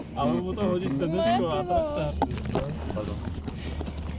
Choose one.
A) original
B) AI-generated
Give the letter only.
A